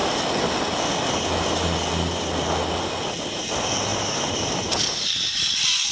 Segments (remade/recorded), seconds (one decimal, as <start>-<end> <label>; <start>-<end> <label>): 0.0-3.9 recorded; 3.9-5.0 remade; 5.0-5.9 recorded